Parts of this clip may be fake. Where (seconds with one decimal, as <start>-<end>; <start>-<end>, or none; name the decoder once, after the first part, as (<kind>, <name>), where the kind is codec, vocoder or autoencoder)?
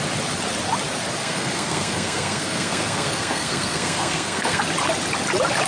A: 1.2-4.6 (codec, SNAC)